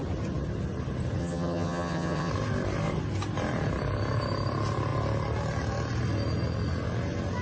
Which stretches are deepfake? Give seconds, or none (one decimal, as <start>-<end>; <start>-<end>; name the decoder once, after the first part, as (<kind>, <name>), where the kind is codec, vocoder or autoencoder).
1.2-2.3 (vocoder, HiFi-GAN)